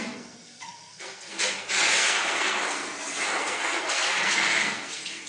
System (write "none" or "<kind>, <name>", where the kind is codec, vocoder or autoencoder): codec, SNAC